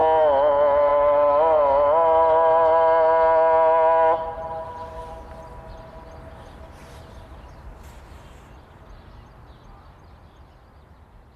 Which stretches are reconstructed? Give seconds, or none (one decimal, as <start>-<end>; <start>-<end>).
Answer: none